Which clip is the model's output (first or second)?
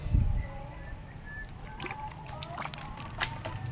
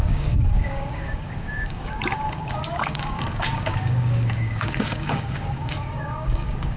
second